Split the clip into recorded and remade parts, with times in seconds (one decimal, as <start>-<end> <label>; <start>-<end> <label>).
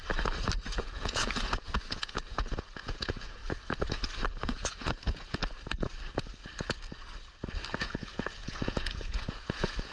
0.0-0.7 recorded; 0.7-3.4 remade; 3.4-4.3 recorded; 4.3-5.4 remade; 5.4-7.7 recorded; 7.7-9.9 remade